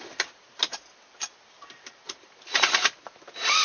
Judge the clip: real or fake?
fake